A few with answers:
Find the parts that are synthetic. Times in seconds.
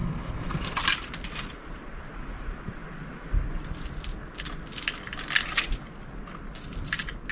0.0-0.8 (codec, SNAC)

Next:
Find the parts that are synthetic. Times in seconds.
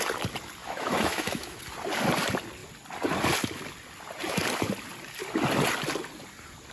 0.6-1.6 (autoencoder, DAC-VAE)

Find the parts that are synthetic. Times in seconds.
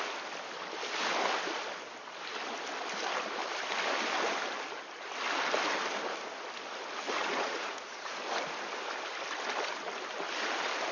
7.2-8.1 (vocoder, Vocos)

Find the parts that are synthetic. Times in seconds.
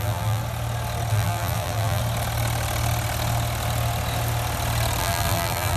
0.0-0.4 (vocoder, BigVGAN v2); 1.1-2.0; 5.0-5.8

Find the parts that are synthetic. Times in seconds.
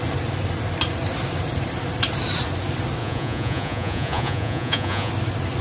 3.0-5.1 (vocoder, Vocos)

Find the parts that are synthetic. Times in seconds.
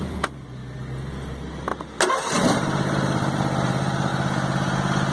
0.0-0.6 (vocoder, BigVGAN v2); 1.1-1.7; 2.5-4.1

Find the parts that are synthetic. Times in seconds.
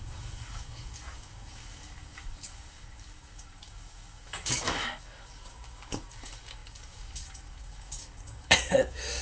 0.0-9.2 (codec, DAC)